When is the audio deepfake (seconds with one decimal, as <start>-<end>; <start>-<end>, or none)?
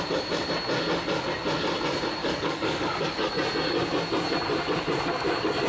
2.2-3.3